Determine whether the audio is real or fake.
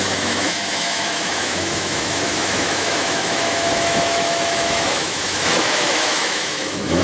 fake